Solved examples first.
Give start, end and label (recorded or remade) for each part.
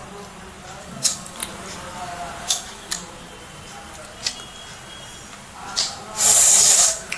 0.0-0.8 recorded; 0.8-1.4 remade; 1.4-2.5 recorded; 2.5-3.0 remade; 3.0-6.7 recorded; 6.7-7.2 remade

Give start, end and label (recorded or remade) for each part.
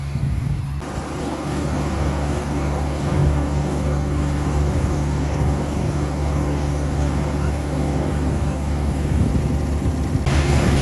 0.0-0.6 remade; 0.6-1.2 recorded; 1.2-9.3 remade; 9.3-10.3 recorded; 10.3-10.8 remade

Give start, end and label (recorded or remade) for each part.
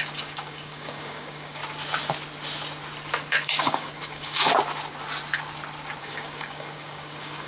0.0-1.6 remade; 1.6-3.3 recorded; 3.3-4.5 remade; 4.5-6.0 recorded; 6.0-7.5 remade